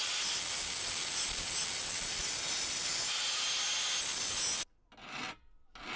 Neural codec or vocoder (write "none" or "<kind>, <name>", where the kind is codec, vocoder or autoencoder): none